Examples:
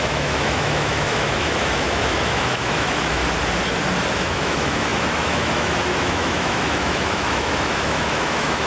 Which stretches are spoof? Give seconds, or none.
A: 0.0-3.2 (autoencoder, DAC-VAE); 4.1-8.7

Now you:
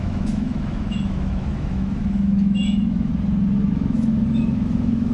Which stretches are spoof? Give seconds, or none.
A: 0.0-3.1 (autoencoder, DAC-VAE); 3.7-5.1

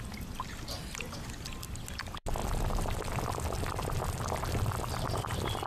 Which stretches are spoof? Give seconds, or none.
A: 2.4-5.7 (vocoder, BigVGAN v2)

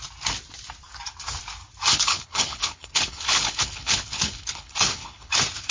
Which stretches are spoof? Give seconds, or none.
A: 1.9-5.3 (codec, HILCodec)

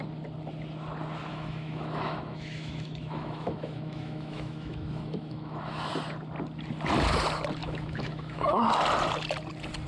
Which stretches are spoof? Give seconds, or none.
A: 1.3-5.9 (autoencoder, DAC-VAE); 7.6-8.6

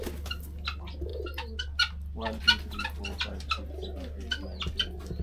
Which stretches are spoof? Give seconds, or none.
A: none

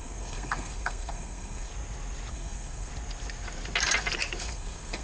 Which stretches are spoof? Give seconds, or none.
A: 0.0-1.7 (codec, SNAC); 2.3-2.9; 4.4-5.0

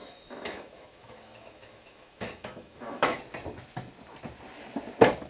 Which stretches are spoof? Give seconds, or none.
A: 0.0-3.2 (autoencoder, DAC-VAE)